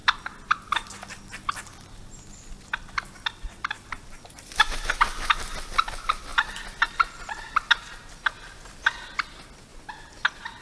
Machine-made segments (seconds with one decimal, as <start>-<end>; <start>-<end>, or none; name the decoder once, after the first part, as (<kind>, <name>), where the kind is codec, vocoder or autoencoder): none